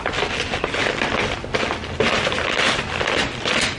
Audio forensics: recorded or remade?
recorded